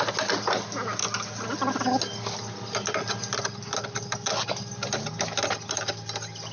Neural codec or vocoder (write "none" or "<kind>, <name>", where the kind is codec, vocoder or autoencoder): none